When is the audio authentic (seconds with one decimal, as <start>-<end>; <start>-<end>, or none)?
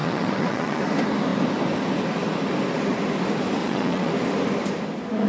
0.8-3.6; 4.1-5.3